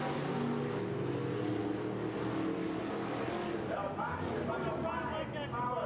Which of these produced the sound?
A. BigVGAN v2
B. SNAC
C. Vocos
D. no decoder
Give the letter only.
D